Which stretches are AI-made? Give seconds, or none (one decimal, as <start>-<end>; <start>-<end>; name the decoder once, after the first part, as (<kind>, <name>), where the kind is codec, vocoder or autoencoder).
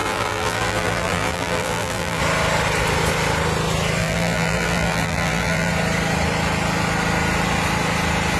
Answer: 0.0-2.2 (vocoder, BigVGAN v2); 4.0-5.7